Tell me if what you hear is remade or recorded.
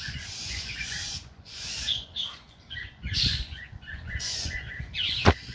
remade